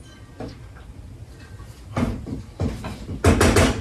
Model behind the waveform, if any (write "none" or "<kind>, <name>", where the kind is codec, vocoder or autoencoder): none